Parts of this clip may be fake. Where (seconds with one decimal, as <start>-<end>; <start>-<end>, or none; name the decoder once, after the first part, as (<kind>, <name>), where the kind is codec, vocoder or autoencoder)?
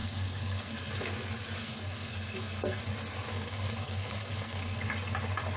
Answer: 0.0-0.9 (codec, SNAC); 1.6-2.8; 3.3-4.8